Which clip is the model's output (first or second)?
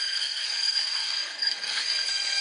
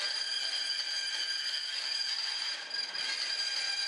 first